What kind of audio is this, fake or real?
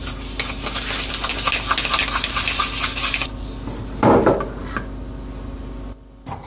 real